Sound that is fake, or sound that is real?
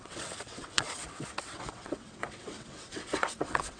fake